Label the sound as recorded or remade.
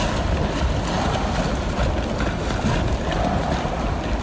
recorded